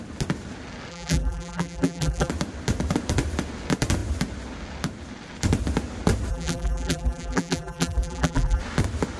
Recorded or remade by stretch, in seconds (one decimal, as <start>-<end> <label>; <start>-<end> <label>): 0.0-0.9 recorded; 0.9-2.3 remade; 2.3-6.3 recorded; 6.3-8.6 remade; 8.6-9.2 recorded